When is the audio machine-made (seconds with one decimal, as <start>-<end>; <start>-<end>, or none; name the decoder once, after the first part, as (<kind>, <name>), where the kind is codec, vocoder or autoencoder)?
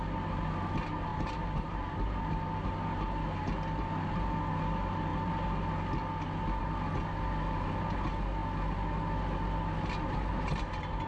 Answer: 1.1-2.6 (vocoder, BigVGAN v2)